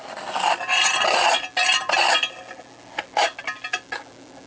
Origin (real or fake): real